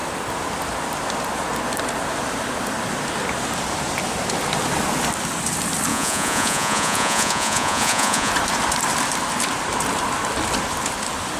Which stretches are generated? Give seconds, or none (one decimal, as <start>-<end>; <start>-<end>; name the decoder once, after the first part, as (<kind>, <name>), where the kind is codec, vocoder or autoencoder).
5.9-8.3 (vocoder, Vocos)